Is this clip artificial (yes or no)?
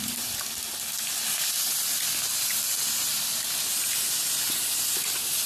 yes